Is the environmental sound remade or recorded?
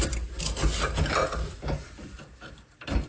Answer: recorded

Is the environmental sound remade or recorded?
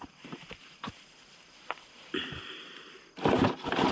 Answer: recorded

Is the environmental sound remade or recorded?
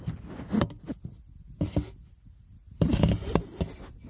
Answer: recorded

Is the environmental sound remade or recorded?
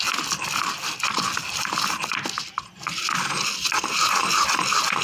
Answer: recorded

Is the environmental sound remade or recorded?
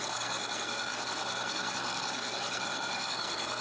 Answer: remade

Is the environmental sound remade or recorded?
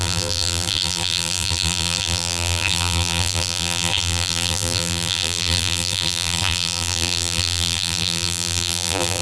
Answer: remade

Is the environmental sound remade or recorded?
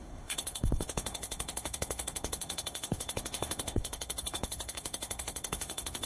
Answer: remade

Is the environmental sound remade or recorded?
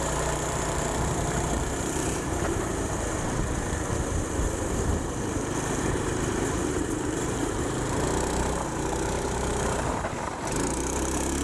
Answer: remade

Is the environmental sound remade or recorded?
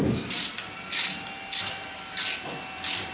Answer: recorded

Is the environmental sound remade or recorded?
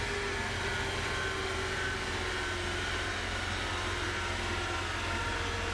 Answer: recorded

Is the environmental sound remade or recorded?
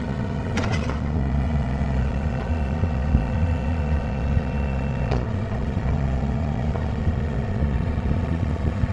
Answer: remade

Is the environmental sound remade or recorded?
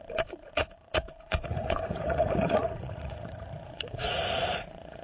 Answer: remade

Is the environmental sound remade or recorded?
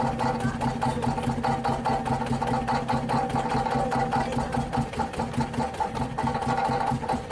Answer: recorded